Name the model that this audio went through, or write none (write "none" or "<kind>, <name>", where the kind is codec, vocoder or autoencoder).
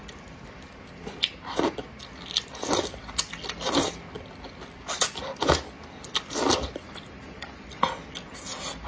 none